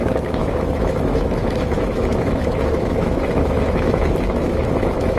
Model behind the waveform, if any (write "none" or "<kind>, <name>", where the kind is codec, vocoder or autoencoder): autoencoder, DAC-VAE